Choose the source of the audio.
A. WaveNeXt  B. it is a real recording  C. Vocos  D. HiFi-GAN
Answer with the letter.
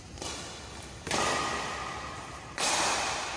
B